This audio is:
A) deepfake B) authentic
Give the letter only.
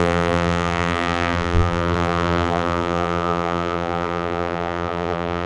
A